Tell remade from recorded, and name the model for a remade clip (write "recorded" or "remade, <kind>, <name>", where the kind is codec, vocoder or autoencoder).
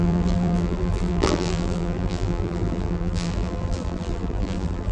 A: remade, vocoder, BigVGAN v2